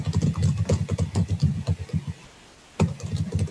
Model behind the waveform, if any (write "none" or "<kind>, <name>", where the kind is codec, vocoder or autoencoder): none